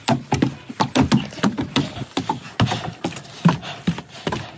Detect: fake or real real